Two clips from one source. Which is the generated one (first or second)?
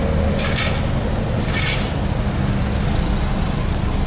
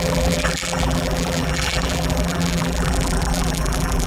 second